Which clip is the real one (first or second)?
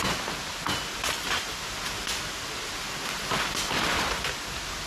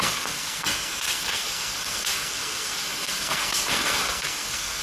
first